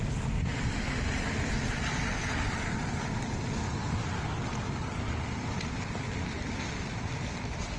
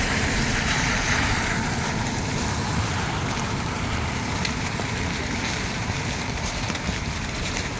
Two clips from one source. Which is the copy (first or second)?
second